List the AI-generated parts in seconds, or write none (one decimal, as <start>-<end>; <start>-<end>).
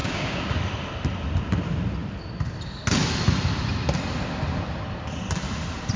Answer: 0.0-0.6